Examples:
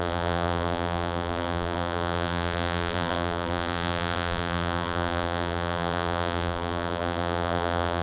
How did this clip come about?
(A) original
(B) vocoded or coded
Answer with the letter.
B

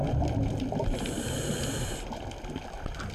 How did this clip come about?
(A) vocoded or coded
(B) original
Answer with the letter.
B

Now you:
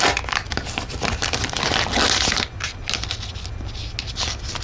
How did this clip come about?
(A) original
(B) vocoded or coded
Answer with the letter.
A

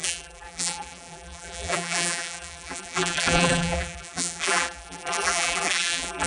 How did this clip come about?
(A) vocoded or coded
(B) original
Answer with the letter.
A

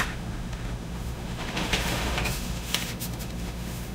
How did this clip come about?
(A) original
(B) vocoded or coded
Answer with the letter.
B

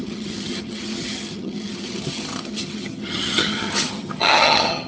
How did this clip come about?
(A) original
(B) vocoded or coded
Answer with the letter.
B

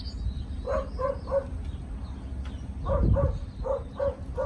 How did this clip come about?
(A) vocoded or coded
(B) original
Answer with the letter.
B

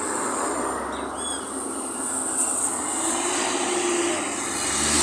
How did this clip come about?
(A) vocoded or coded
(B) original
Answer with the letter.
B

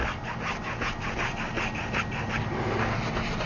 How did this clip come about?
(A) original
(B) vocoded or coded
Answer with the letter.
A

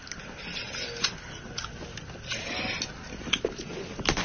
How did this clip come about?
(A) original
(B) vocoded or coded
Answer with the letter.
A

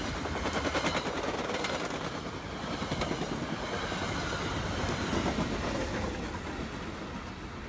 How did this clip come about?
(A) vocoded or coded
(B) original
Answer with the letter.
B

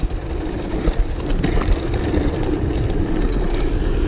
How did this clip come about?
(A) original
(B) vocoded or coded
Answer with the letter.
A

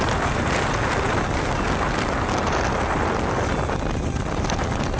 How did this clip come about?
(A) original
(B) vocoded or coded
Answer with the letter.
A